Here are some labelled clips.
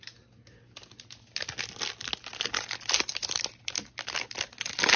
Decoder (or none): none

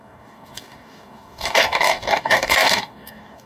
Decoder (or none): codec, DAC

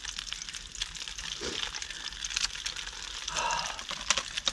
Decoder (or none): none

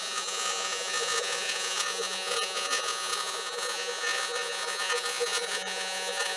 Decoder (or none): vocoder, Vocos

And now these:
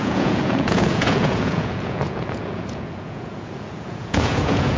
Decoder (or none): vocoder, Vocos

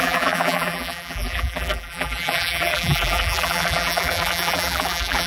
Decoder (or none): vocoder, BigVGAN v2